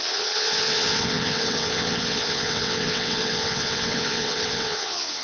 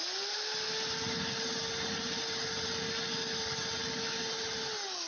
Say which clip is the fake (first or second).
first